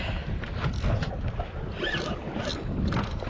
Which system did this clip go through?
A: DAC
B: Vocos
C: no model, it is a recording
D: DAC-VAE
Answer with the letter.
C